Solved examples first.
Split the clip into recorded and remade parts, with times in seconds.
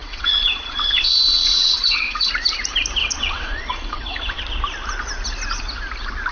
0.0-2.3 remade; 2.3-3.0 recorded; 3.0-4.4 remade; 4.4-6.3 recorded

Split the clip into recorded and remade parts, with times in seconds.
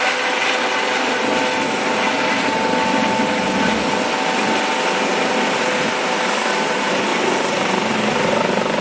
0.0-8.8 recorded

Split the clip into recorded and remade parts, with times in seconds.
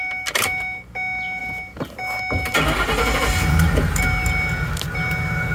0.0-5.5 recorded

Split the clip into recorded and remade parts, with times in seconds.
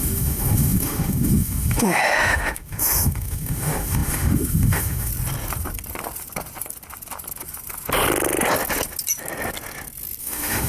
0.0-5.1 remade; 5.1-10.2 recorded; 10.2-10.7 remade